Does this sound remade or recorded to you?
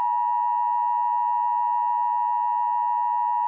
recorded